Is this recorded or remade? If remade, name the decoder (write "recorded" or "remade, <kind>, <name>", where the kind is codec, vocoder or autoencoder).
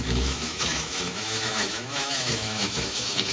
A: remade, autoencoder, DAC-VAE